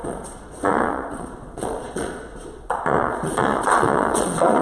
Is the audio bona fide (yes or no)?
no